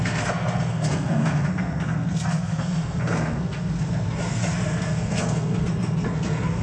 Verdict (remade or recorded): remade